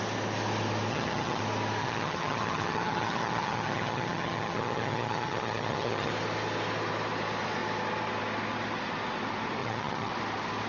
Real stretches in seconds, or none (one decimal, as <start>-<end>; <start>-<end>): 0.0-0.9; 1.4-1.8; 6.1-9.6; 10.1-10.7